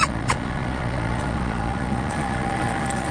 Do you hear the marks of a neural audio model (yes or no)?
yes